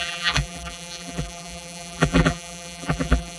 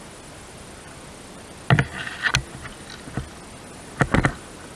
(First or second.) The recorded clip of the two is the second